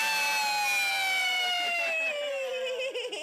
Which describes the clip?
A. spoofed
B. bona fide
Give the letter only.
B